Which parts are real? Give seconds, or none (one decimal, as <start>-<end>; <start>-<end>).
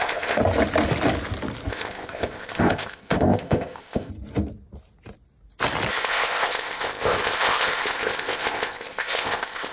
0.4-1.7; 4.1-5.9